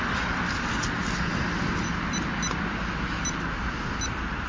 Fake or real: real